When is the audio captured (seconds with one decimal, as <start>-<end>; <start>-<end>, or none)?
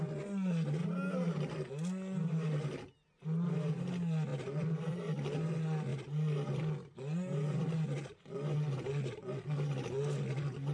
0.0-4.3; 4.9-10.7